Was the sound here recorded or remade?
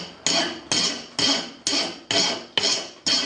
recorded